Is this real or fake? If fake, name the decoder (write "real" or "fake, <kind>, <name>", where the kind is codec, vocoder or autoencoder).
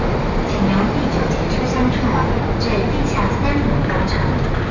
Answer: real